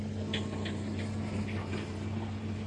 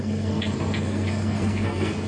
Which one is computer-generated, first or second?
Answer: second